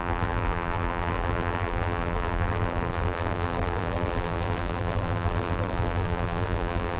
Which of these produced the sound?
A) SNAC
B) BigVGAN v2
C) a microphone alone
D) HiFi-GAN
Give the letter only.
B